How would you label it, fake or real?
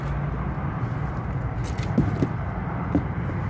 real